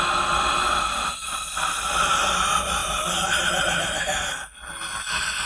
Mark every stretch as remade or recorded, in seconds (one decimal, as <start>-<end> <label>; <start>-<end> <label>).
0.0-5.5 recorded